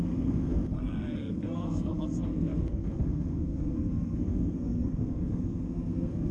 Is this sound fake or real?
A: fake